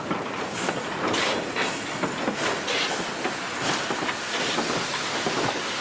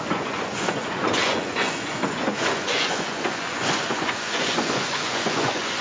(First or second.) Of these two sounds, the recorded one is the first